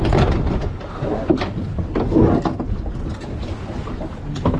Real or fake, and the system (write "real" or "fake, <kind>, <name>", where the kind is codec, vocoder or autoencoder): real